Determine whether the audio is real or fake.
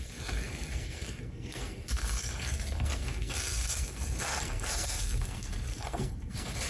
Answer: fake